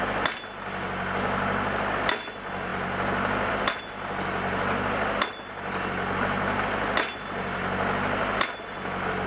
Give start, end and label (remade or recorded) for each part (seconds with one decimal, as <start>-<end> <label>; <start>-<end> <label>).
0.0-9.3 recorded